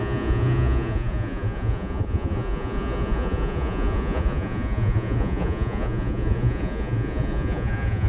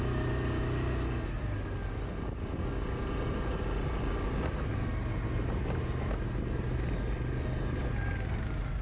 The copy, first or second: first